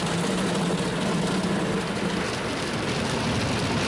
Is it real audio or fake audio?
real